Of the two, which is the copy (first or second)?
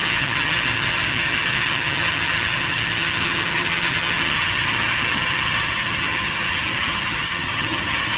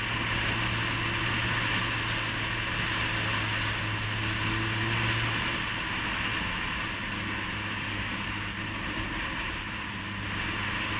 first